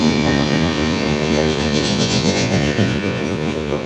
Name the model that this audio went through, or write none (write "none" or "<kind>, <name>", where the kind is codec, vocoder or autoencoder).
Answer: vocoder, Vocos